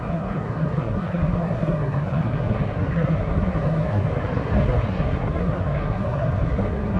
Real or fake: fake